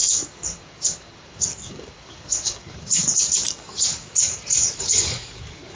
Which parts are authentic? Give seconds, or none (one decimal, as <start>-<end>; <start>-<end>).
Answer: none